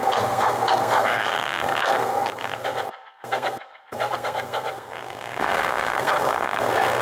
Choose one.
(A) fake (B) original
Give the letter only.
A